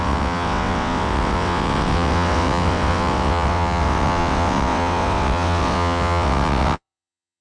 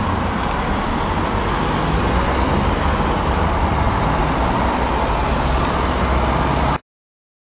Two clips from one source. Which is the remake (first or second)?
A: first